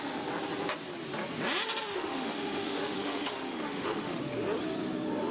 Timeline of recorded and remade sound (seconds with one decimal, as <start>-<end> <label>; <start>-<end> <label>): 0.0-1.9 recorded; 1.9-4.2 remade; 4.2-5.3 recorded